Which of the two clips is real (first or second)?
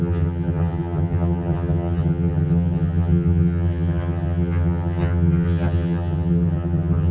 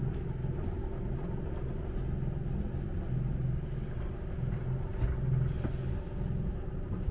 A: second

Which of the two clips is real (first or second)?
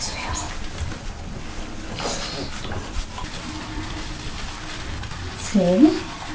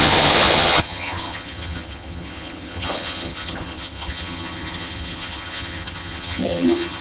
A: first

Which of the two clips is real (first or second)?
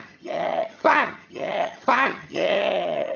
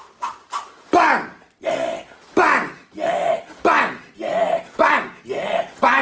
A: second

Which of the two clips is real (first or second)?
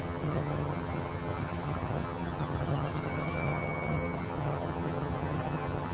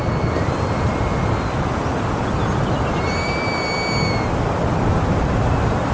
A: second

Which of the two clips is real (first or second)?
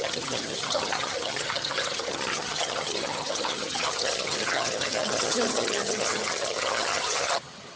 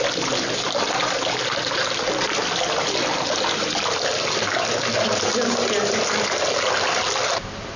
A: second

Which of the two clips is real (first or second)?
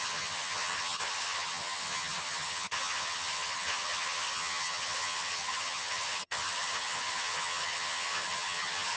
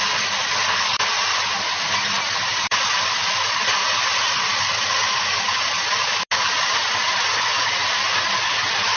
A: second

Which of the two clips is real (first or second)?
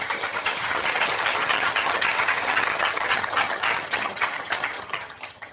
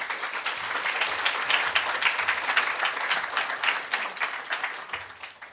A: second